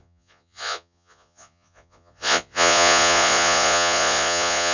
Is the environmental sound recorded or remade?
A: remade